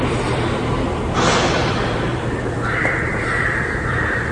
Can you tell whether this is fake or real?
fake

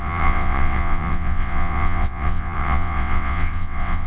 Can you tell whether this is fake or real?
fake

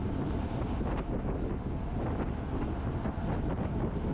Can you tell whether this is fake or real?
real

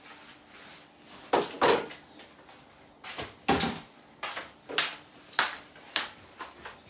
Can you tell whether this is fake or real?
real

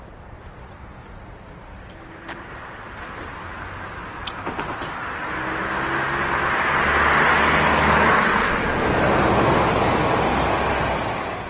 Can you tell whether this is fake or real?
real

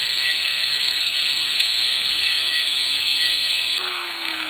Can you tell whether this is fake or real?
fake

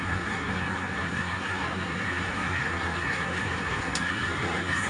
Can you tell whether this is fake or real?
fake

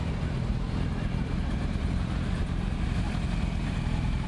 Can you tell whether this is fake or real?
fake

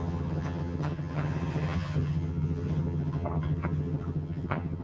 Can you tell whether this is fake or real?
fake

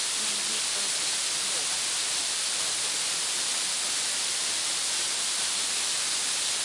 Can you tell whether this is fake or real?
real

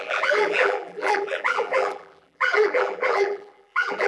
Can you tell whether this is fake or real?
fake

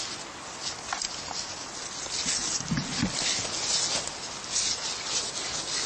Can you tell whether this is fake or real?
real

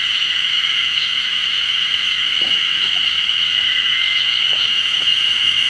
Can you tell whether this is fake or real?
fake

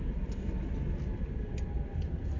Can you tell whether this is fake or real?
real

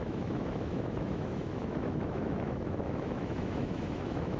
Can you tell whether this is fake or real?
fake